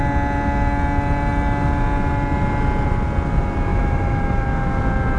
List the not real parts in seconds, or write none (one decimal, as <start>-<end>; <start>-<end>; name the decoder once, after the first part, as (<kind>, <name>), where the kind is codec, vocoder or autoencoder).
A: 3.7-4.8 (autoencoder, DAC-VAE)